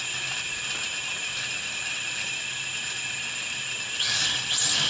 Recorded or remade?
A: recorded